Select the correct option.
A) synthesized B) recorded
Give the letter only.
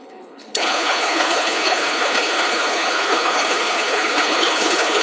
A